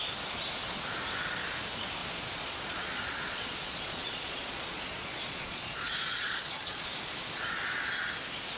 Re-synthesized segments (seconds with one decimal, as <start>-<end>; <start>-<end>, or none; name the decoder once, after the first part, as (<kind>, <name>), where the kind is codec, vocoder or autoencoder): 2.0-6.9 (vocoder, Vocos)